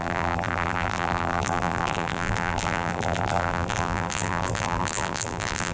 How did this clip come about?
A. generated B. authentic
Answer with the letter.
A